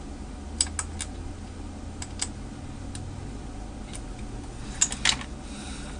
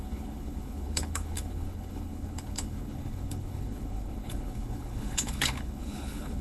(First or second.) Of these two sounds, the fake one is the second